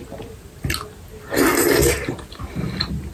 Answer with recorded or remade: recorded